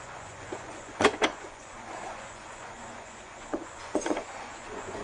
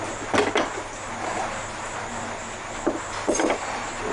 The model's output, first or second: first